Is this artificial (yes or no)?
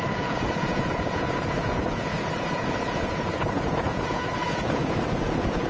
yes